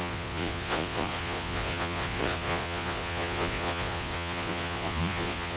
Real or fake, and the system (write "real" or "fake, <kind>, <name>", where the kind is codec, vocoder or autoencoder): fake, vocoder, Vocos